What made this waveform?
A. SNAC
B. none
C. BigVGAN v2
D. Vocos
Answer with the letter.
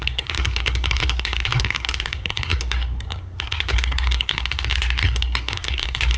A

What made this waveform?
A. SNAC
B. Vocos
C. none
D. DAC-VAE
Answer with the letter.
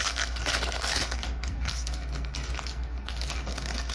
A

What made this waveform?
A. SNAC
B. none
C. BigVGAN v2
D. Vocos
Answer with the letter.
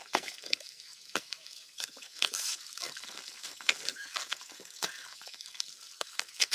A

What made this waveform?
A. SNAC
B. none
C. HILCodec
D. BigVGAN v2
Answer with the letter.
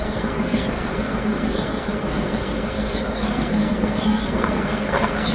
A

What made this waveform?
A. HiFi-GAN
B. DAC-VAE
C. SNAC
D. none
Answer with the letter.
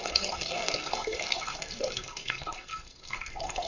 C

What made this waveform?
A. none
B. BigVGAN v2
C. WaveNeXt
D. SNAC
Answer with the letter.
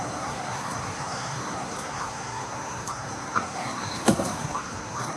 D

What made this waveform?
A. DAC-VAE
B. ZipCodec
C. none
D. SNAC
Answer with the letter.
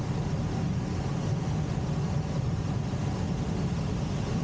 C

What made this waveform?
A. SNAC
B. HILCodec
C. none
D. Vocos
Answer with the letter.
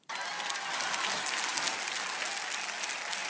C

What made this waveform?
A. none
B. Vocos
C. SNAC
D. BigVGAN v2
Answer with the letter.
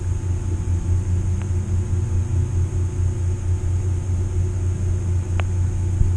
A